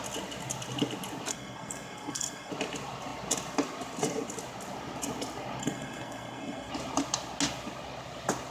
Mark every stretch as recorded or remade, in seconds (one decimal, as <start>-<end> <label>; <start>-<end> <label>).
0.0-1.3 recorded; 1.3-2.5 remade; 2.5-5.6 recorded; 5.6-6.7 remade; 6.7-8.5 recorded